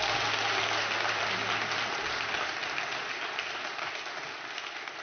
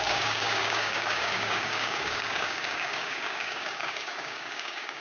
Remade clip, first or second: second